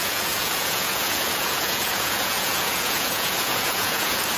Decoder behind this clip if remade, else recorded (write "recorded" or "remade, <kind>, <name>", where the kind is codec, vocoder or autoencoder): remade, vocoder, Vocos